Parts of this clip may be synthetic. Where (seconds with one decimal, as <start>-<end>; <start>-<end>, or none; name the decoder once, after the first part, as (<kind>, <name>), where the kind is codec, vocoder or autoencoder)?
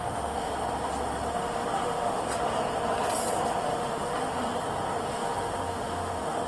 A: 0.0-0.5 (autoencoder, DAC-VAE); 1.3-2.2; 3.5-4.5; 5.1-6.5